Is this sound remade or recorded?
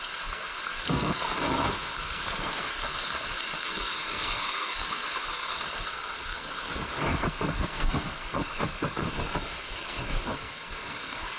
remade